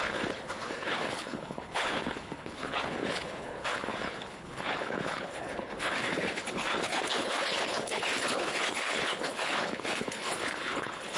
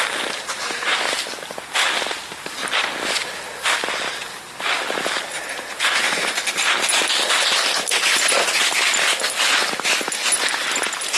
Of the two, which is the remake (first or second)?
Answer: first